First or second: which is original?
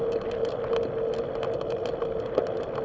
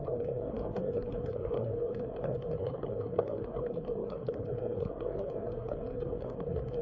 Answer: first